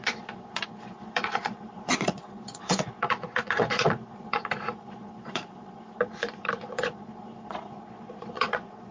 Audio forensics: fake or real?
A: fake